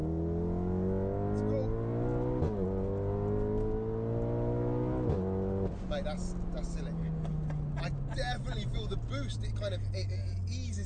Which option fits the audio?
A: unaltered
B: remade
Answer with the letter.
A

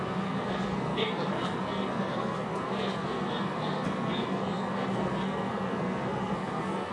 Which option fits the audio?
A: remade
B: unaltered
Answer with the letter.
A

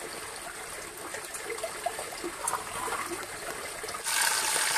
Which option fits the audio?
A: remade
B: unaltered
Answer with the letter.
B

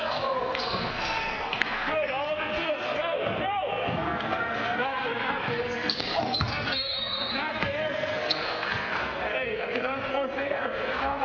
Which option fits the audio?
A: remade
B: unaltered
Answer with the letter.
A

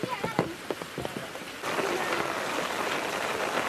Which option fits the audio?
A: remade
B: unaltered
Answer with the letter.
B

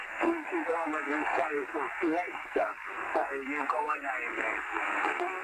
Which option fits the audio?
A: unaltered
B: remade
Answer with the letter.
B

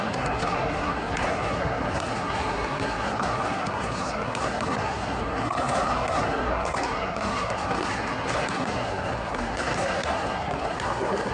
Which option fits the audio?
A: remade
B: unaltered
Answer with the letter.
A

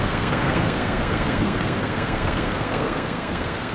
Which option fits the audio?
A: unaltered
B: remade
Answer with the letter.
B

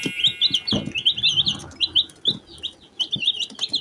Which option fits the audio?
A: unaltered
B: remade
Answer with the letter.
A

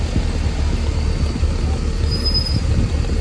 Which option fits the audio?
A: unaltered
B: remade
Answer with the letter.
A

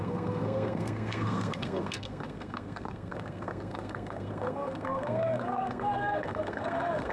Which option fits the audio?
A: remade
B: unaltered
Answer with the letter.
A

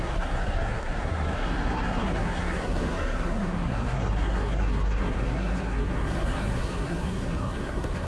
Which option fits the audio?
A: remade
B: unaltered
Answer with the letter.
A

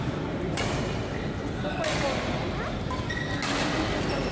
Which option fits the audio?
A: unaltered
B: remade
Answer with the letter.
A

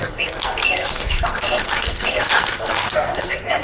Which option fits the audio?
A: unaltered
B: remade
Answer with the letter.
B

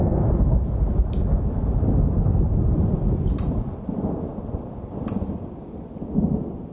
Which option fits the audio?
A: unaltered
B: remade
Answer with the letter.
A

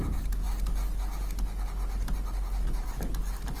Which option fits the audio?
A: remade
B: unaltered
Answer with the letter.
B